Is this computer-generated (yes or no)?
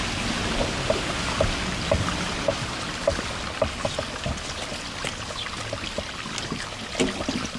no